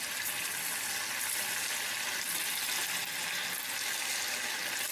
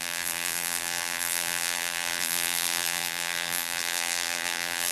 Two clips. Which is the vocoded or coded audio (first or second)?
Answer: second